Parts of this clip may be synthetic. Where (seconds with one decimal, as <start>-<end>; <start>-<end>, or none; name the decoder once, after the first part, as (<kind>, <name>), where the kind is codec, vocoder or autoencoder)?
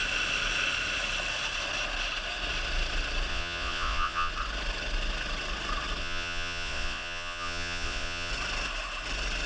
3.3-4.3 (vocoder, Vocos); 6.0-8.3